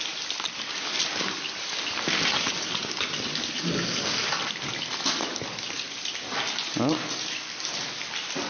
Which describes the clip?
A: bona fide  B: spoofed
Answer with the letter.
A